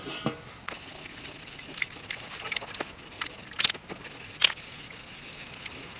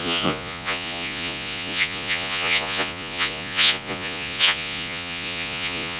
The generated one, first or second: second